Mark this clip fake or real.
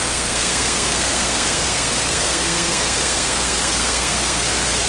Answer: fake